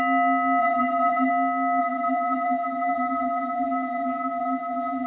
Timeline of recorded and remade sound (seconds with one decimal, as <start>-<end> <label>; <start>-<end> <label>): 0.0-0.6 recorded; 0.6-1.3 remade; 1.3-1.8 recorded; 1.8-5.1 remade